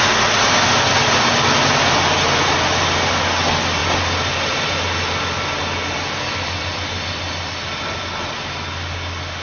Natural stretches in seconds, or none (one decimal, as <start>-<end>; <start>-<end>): 0.0-9.4